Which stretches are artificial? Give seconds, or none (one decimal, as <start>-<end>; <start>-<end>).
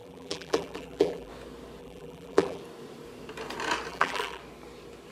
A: 0.0-1.3; 1.8-2.6; 3.9-4.4